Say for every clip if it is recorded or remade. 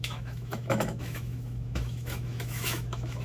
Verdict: remade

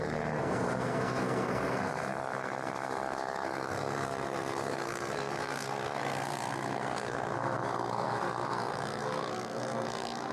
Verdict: remade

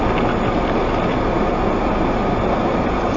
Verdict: recorded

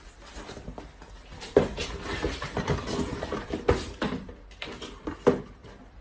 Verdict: recorded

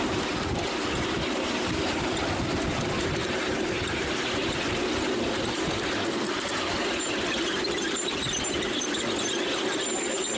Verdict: recorded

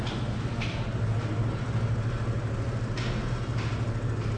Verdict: recorded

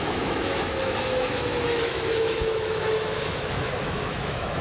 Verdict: remade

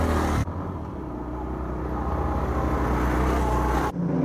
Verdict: recorded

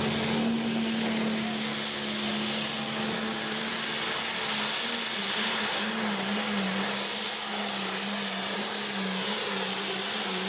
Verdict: recorded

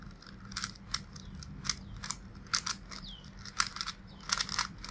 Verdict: recorded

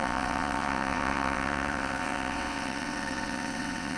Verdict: remade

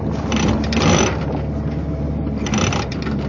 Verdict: recorded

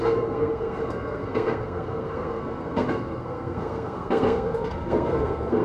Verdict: remade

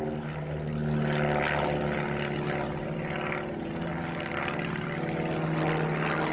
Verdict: recorded